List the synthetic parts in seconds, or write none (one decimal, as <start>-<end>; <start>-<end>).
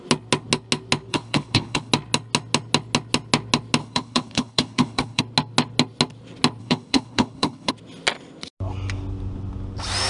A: 1.1-1.9; 3.8-5.2; 6.6-7.7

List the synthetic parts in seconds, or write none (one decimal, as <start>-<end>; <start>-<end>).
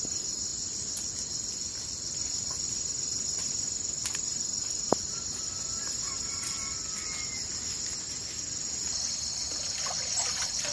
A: none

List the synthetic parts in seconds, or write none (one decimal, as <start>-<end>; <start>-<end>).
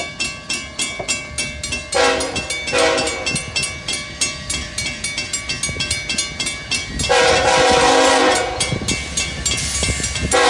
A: none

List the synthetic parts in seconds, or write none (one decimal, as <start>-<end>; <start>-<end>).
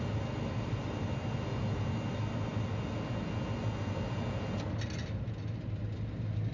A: none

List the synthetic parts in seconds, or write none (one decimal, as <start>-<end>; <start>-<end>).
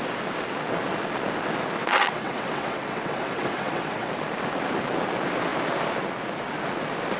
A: 1.8-4.1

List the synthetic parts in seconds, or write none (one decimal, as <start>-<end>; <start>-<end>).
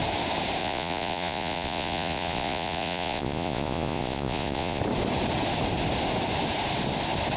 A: 0.6-4.8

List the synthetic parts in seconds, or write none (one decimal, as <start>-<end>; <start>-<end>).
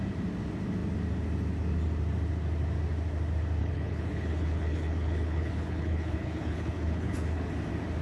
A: 3.6-7.5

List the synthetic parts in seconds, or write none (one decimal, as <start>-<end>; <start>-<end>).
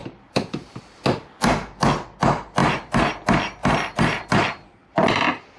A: 0.0-0.8; 2.6-3.1; 3.6-4.2